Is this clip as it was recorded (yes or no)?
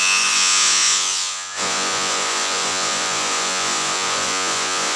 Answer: no